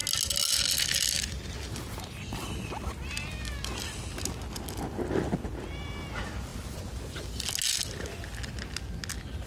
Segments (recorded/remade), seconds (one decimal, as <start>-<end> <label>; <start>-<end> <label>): 0.0-6.5 recorded; 6.5-7.5 remade; 7.5-9.5 recorded